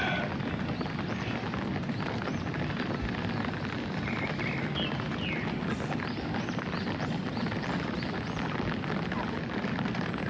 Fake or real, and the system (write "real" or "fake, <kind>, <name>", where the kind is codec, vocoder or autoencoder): real